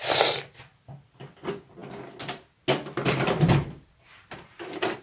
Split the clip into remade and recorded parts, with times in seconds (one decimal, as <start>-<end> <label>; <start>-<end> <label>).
0.0-5.0 recorded